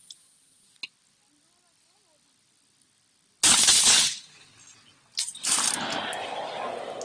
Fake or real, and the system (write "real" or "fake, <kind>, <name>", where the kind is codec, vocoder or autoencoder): real